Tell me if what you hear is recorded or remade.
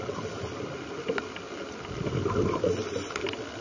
recorded